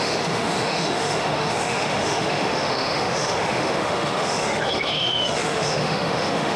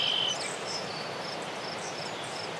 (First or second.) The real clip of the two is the second